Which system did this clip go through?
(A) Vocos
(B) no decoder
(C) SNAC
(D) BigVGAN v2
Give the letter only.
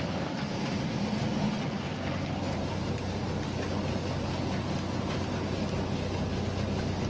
B